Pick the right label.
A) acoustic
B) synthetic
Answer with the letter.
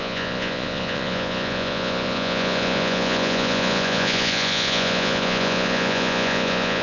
B